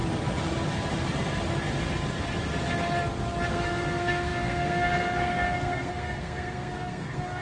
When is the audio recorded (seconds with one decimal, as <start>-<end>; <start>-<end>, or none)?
0.0-3.5